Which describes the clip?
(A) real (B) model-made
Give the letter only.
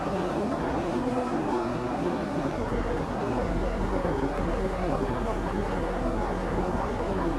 B